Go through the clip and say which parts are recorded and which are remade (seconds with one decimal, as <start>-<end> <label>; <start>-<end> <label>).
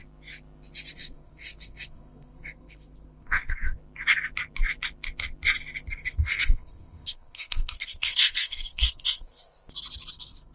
0.0-0.9 recorded; 0.9-3.8 remade; 3.8-5.9 recorded; 5.9-9.3 remade; 9.3-10.1 recorded; 10.1-10.5 remade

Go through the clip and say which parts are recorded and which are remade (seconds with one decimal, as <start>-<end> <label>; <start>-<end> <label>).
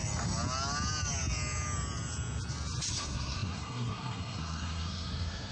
0.0-2.9 recorded; 2.9-5.5 remade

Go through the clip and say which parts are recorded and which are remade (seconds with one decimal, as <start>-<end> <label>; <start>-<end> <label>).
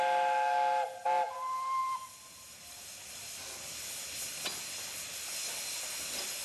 0.0-6.4 recorded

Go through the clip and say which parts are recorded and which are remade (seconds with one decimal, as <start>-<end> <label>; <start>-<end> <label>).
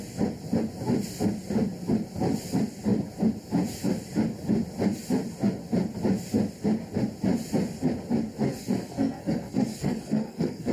0.0-8.5 recorded; 8.5-10.7 remade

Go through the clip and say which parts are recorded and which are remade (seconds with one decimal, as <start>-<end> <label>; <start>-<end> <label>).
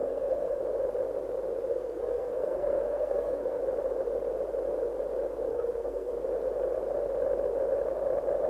0.0-0.6 remade; 0.6-1.7 recorded; 1.7-3.6 remade; 3.6-5.5 recorded; 5.5-6.1 remade; 6.1-8.5 recorded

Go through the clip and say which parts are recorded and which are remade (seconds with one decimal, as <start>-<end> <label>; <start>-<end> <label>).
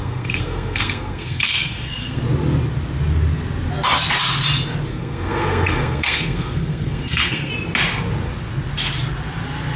0.0-2.2 remade; 2.2-4.9 recorded; 4.9-7.5 remade; 7.5-9.8 recorded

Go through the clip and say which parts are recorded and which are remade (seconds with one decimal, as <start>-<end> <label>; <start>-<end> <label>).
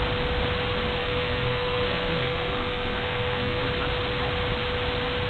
0.0-1.0 recorded; 1.0-3.6 remade; 3.6-5.3 recorded